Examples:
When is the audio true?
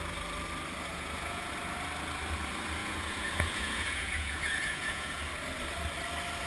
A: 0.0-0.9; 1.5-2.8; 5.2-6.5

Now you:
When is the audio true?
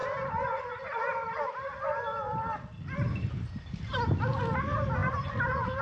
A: 0.0-5.8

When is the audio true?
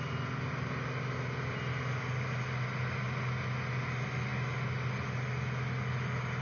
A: 0.0-6.4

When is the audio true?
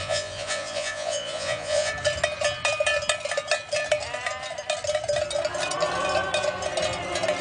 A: 1.9-7.4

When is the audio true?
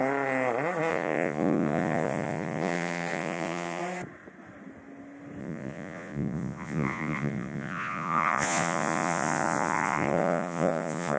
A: 0.0-0.9; 3.8-5.4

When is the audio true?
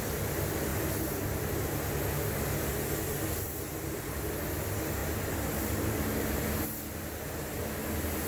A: 0.0-8.3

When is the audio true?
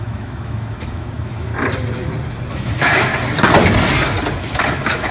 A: 1.5-2.5; 3.1-4.4